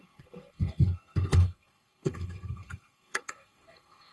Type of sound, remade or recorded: remade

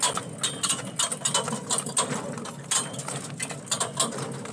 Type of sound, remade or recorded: recorded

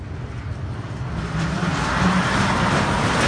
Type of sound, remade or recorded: recorded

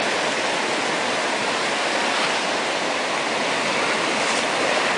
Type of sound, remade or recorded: recorded